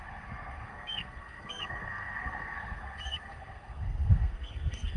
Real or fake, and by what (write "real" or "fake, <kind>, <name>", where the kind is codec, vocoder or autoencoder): fake, codec, SNAC